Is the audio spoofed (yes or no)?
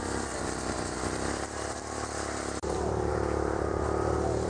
yes